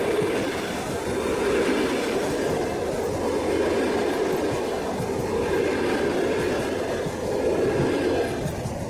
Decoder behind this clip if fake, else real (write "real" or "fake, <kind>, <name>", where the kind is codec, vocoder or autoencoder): real